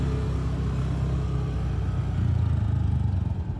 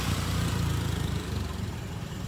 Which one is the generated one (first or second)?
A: second